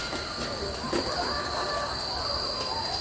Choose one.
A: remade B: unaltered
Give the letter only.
B